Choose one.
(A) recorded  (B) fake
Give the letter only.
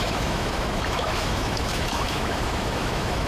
B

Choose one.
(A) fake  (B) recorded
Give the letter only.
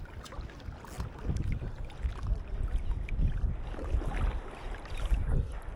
B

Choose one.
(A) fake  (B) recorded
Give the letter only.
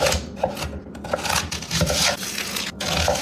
B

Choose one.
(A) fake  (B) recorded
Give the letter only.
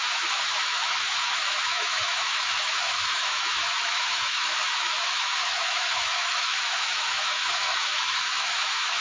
A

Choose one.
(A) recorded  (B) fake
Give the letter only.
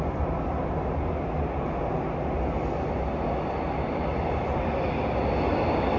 A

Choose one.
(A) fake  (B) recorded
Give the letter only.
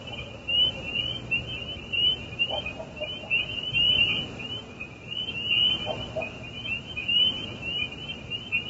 B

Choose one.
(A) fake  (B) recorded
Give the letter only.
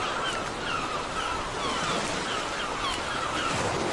B